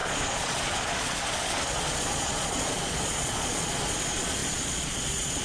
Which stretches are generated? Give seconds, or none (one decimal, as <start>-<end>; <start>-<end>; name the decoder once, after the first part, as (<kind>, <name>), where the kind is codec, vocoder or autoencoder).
0.0-5.4 (vocoder, Vocos)